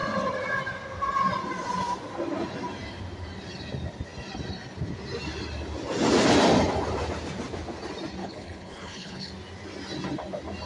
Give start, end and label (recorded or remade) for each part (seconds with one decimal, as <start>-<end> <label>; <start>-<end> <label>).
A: 0.0-8.2 recorded; 8.2-9.3 remade; 9.3-10.7 recorded